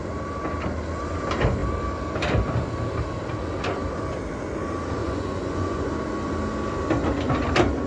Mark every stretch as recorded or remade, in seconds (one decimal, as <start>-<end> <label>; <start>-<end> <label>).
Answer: 0.0-5.0 recorded; 5.0-5.9 remade; 5.9-7.9 recorded

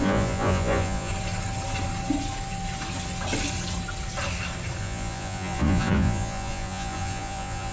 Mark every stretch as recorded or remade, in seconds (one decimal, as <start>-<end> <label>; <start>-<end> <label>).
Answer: 0.0-1.1 remade; 1.1-4.8 recorded; 4.8-7.7 remade

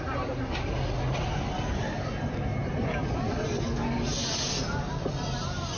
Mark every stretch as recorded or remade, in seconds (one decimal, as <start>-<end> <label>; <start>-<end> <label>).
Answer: 0.0-5.8 recorded

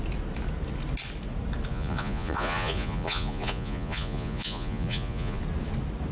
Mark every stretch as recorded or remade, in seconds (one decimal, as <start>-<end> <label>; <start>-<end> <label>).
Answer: 0.0-1.7 recorded; 1.7-5.4 remade; 5.4-6.1 recorded

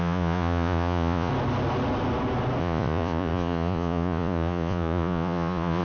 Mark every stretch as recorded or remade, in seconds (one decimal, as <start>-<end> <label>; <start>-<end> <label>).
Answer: 0.0-1.3 remade; 1.3-2.6 recorded; 2.6-5.8 remade

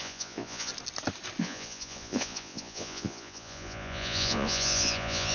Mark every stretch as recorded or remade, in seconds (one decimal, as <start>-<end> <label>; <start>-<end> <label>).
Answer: 0.0-0.7 remade; 0.7-1.4 recorded; 1.4-5.3 remade

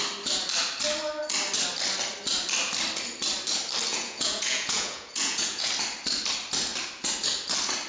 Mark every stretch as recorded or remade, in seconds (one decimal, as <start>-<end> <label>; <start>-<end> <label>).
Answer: 0.0-3.9 recorded; 3.9-5.7 remade; 5.7-7.9 recorded

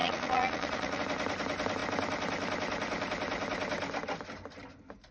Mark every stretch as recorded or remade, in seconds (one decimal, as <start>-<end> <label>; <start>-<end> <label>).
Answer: 0.0-1.0 remade; 1.0-5.1 recorded